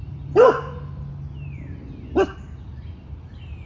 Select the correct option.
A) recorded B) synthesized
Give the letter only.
A